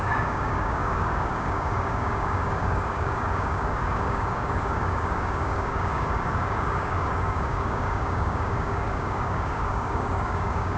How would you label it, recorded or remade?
remade